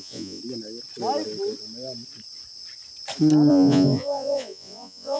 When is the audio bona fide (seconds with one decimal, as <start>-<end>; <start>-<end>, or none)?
0.4-3.5